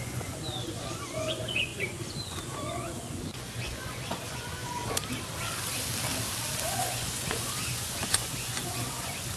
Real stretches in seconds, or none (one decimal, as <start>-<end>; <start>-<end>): 4.8-6.6